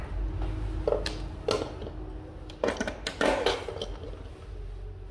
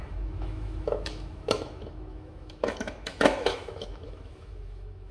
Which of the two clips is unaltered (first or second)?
first